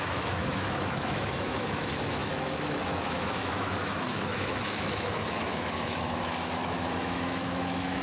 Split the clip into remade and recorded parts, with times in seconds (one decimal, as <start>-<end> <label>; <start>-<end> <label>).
0.0-8.0 remade